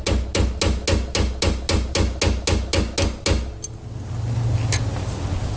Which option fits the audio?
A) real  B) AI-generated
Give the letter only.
A